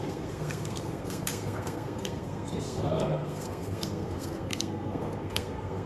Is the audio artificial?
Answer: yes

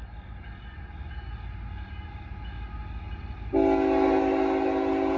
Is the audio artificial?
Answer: no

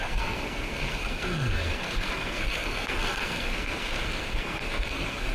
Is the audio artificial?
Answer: yes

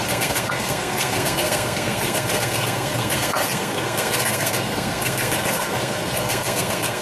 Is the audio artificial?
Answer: yes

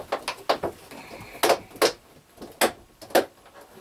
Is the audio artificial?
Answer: no